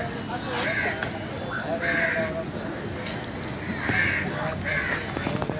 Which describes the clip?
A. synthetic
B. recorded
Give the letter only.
B